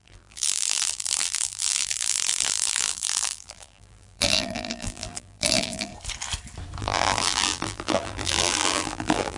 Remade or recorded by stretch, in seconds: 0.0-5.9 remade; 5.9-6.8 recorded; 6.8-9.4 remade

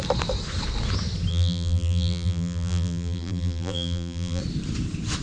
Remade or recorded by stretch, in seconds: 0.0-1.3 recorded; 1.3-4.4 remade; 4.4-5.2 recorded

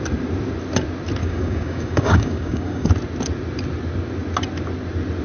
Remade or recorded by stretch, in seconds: 0.0-1.2 recorded; 1.2-2.9 remade; 2.9-5.2 recorded

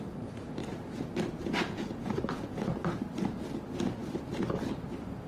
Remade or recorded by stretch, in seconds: 0.0-0.6 recorded; 0.6-1.4 remade; 1.4-5.3 recorded